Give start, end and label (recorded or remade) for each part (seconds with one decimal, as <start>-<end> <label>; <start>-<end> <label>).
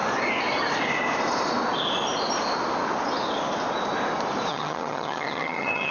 0.0-4.5 recorded; 4.5-5.9 remade